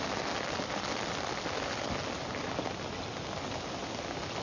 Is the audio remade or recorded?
recorded